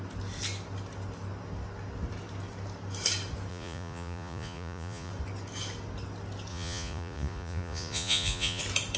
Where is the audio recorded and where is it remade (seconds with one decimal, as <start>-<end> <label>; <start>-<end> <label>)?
0.0-3.5 recorded; 3.5-5.1 remade; 5.1-6.5 recorded; 6.5-8.6 remade; 8.6-9.0 recorded